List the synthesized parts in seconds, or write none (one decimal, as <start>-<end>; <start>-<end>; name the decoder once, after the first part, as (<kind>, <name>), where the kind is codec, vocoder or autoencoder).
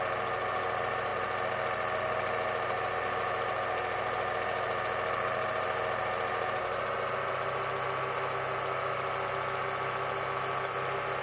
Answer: none